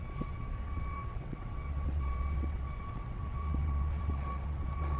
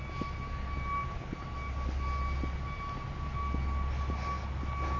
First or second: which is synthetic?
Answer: first